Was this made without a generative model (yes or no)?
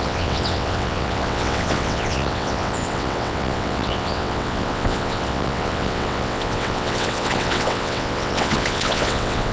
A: no